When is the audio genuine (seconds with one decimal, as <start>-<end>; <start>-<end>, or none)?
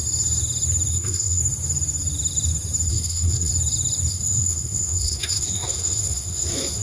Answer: 0.0-0.9; 1.4-2.9; 3.5-4.1